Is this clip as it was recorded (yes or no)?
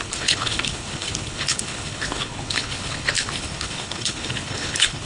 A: no